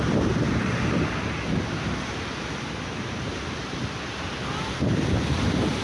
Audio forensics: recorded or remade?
recorded